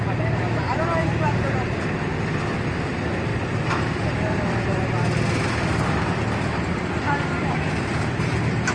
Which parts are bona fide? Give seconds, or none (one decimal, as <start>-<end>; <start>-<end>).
0.0-3.3